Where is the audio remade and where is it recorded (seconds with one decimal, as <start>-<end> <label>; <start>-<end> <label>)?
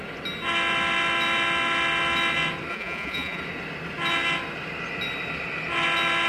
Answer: 0.0-2.7 recorded; 2.7-3.4 remade; 3.4-6.3 recorded